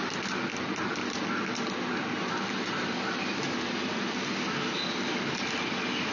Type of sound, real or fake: real